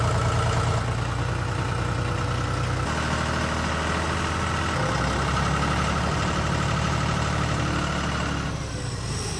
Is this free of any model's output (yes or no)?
yes